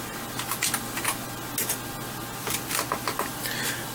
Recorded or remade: recorded